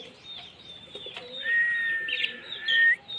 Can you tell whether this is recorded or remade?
recorded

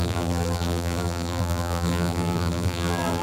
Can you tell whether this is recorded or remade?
remade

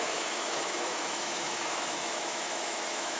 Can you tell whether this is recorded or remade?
remade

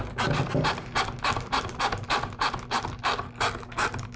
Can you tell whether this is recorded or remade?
recorded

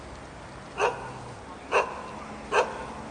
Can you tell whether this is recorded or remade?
recorded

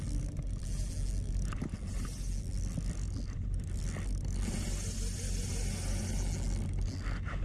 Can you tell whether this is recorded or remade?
recorded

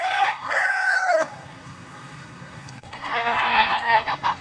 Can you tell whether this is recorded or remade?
remade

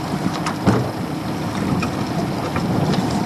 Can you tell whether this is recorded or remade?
recorded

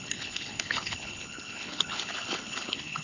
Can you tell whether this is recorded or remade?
remade